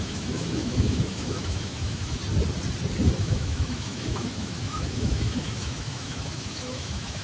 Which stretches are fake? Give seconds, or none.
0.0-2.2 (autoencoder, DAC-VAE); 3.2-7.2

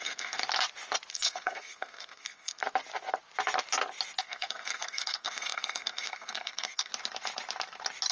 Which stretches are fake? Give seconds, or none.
0.0-0.4 (codec, SNAC); 1.1-2.6; 4.2-6.9

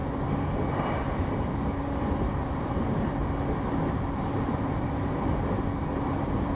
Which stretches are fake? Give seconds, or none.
0.0-2.8 (vocoder, BigVGAN v2); 3.2-5.1; 5.9-6.5

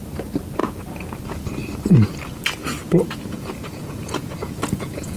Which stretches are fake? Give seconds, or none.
0.6-1.5 (vocoder, Vocos); 2.8-5.2

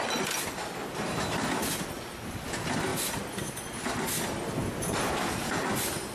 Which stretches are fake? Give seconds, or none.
none

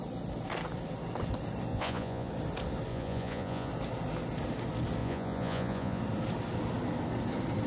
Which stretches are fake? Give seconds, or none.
1.7-2.3 (vocoder, Vocos); 2.9-3.7; 5.0-6.0

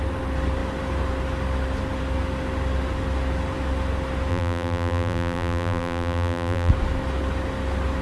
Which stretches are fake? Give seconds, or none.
4.3-6.7 (vocoder, BigVGAN v2)